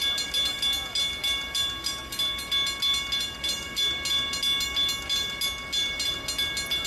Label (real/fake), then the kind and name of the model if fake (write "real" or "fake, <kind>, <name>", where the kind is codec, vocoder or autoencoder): real